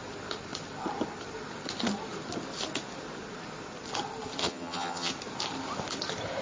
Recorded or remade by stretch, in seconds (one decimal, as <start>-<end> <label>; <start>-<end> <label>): 0.0-4.4 recorded; 4.4-5.1 remade; 5.1-6.4 recorded